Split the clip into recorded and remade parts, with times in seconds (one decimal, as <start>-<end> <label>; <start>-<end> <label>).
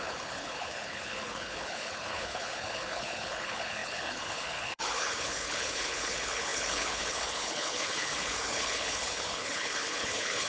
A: 0.0-10.5 remade